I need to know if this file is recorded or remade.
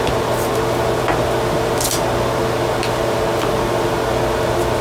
recorded